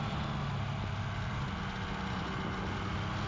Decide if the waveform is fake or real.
real